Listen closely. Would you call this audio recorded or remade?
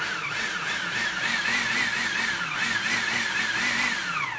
recorded